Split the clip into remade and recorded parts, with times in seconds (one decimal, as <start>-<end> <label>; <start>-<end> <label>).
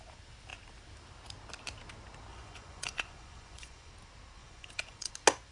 0.0-2.3 recorded; 2.3-3.9 remade; 3.9-4.4 recorded; 4.4-5.1 remade; 5.1-5.5 recorded